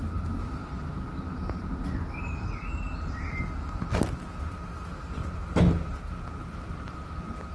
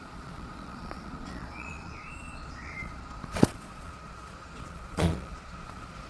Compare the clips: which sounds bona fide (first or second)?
first